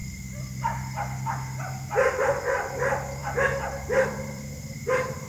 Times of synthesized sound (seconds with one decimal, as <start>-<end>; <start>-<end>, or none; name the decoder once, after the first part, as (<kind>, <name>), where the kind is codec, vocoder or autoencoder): 3.2-5.3 (vocoder, BigVGAN v2)